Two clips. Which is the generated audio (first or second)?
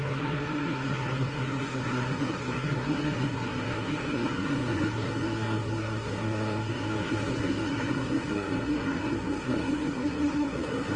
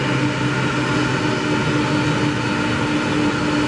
first